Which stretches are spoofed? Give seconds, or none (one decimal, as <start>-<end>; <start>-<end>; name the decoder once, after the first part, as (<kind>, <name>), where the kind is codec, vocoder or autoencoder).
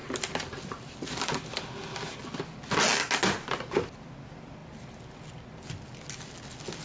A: none